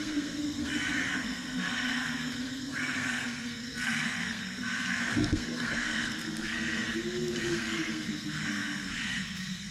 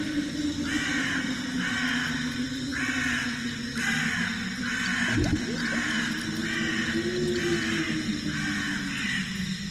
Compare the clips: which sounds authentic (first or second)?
second